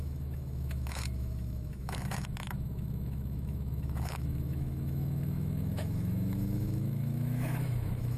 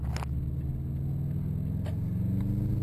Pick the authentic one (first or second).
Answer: second